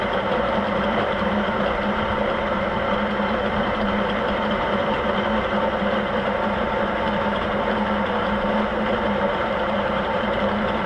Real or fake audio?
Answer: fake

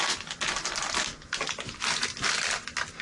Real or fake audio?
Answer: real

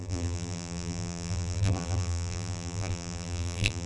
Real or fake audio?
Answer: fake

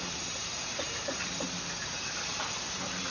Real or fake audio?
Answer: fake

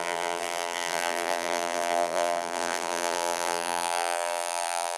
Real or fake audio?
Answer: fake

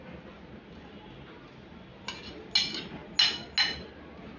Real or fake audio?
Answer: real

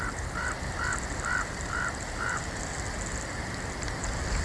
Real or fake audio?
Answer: real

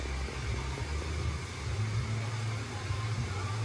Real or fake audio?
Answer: real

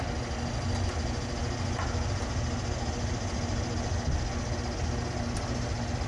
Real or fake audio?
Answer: real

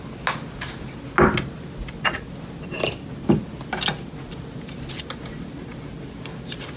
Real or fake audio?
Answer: real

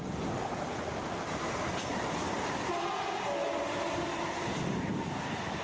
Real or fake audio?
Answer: real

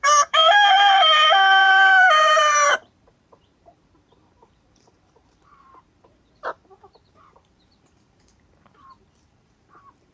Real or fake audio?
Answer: fake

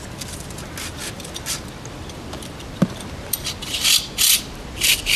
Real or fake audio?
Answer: real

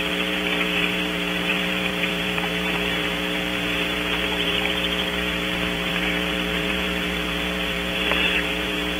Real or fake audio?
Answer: fake